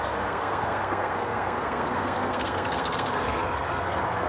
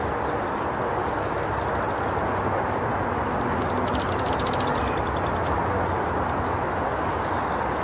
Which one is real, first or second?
second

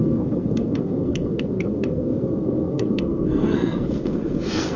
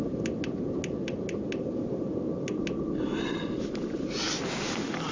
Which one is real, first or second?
second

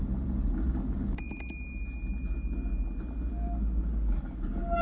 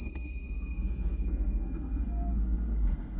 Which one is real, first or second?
first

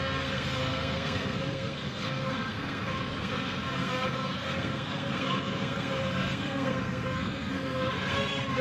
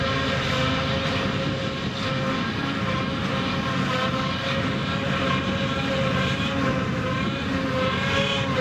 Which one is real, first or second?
second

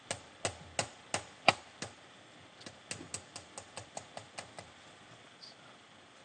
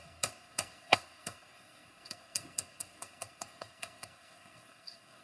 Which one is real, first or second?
first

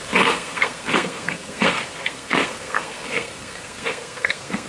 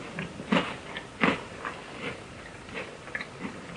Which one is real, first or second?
second